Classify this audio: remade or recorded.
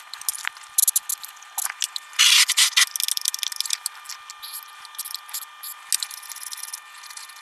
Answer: recorded